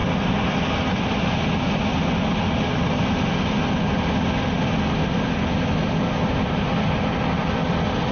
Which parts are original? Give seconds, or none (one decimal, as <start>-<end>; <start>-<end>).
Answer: 0.0-8.1